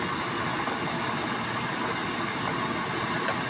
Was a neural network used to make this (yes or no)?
no